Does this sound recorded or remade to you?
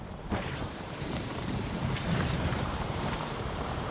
remade